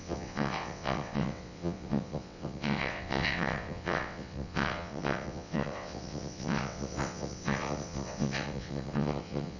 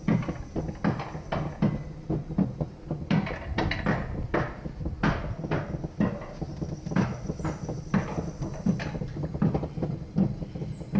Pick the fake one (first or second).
first